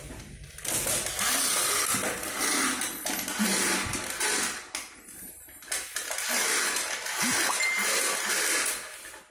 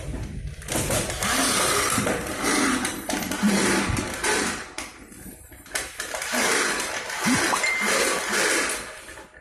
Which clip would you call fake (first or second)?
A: second